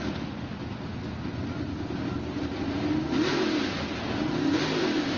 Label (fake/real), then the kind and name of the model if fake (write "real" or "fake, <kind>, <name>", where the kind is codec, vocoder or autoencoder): real